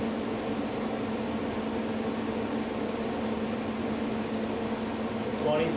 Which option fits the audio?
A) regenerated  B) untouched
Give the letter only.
B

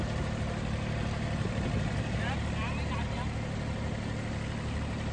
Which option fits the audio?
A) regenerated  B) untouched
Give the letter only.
B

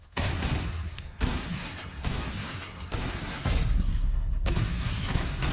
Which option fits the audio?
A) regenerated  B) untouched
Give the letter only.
A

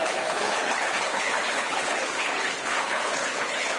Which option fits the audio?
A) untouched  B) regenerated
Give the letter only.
B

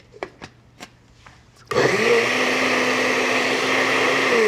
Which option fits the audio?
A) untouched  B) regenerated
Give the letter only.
A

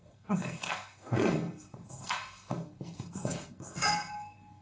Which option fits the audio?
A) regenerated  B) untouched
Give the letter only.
A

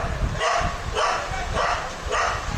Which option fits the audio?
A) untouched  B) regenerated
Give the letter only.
A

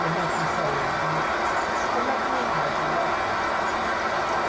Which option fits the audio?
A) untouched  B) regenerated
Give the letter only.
A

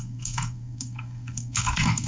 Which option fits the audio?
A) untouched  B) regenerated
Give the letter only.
B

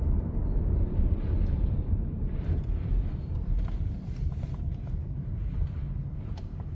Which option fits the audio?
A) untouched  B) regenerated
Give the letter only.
B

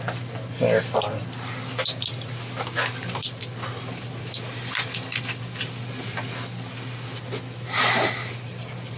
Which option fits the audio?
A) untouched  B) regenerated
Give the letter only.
A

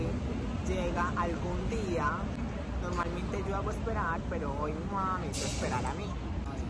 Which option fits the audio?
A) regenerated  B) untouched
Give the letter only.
B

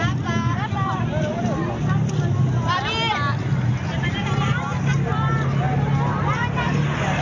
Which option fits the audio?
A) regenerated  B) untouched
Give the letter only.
B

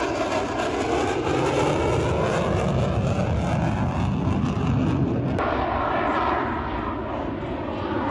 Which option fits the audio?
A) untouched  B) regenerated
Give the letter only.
A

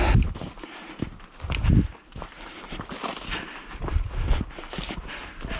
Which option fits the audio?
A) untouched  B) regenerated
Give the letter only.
A